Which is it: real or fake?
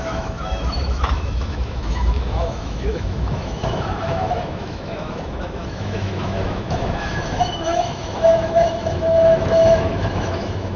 fake